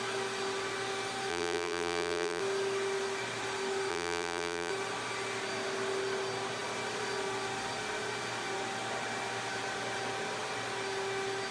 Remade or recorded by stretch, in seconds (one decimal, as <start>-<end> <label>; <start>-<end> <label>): 0.0-1.3 recorded; 1.3-2.4 remade; 2.4-3.9 recorded; 3.9-4.7 remade; 4.7-11.5 recorded